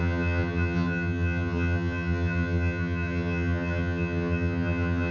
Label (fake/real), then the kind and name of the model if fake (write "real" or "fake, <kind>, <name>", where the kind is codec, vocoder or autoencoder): fake, vocoder, HiFi-GAN